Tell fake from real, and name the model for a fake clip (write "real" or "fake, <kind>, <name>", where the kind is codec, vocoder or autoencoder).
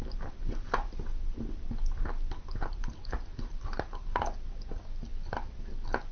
real